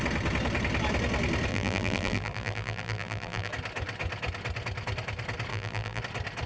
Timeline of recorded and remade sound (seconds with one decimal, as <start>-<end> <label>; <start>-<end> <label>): 0.0-1.5 recorded; 1.5-3.5 remade; 3.5-5.5 recorded; 5.5-6.0 remade; 6.0-6.5 recorded